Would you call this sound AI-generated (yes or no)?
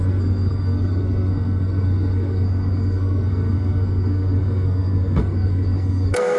yes